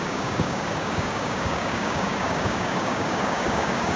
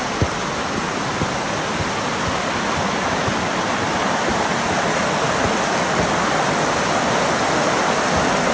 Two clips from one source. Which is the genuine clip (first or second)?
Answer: second